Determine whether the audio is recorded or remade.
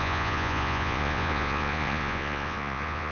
remade